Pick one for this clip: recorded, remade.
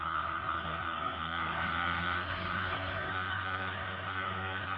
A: remade